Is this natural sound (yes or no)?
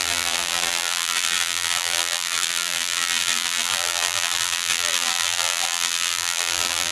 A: no